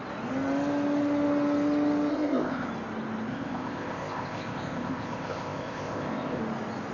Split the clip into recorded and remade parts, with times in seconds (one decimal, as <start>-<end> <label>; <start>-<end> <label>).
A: 0.0-2.1 recorded; 2.1-2.7 remade; 2.7-3.3 recorded; 3.3-6.4 remade; 6.4-6.9 recorded